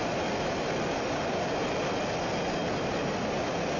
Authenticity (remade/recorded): recorded